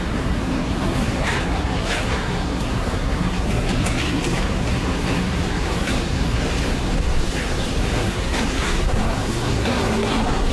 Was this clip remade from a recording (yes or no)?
yes